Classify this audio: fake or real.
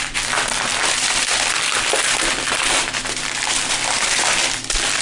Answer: real